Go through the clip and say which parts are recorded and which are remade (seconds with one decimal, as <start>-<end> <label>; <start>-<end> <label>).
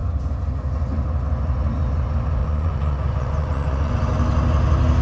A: 0.0-2.4 recorded; 2.4-3.9 remade; 3.9-5.0 recorded